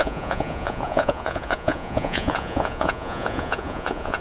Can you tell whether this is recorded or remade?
remade